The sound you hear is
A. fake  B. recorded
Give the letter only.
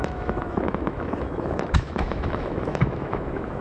A